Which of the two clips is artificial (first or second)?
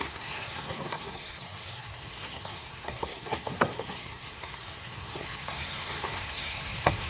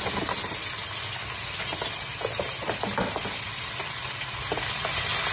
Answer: first